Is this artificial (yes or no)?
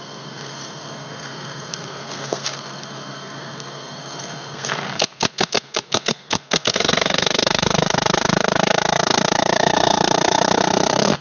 yes